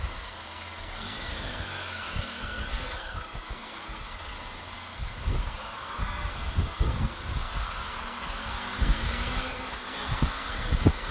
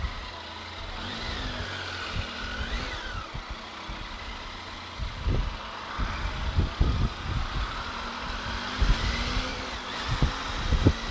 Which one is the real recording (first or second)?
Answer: second